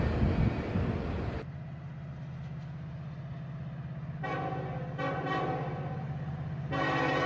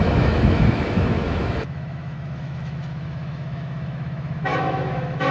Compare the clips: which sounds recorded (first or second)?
first